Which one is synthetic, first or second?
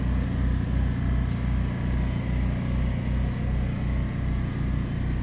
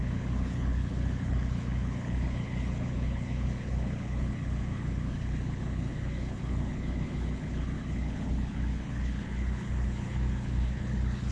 second